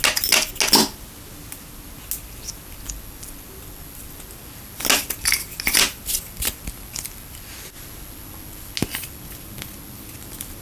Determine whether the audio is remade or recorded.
recorded